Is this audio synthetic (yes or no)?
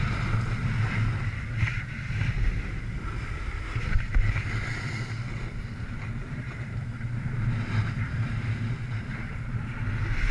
no